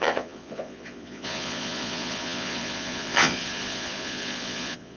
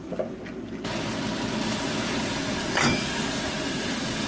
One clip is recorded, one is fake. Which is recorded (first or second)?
second